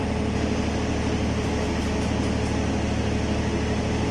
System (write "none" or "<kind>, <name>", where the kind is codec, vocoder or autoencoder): none